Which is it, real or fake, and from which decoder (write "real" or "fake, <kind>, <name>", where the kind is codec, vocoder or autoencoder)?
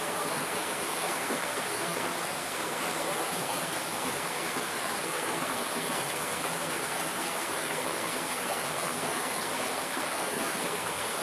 fake, codec, SNAC